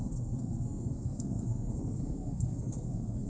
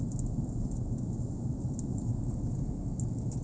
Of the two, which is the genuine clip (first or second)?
second